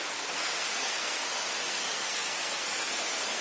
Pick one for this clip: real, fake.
fake